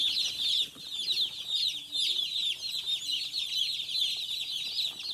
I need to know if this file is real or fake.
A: real